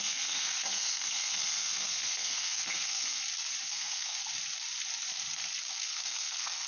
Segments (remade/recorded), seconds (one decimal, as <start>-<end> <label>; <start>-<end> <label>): 0.0-3.2 remade; 3.2-3.7 recorded; 3.7-4.2 remade; 4.2-5.8 recorded; 5.8-6.7 remade